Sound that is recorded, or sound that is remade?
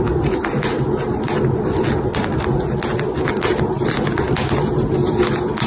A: recorded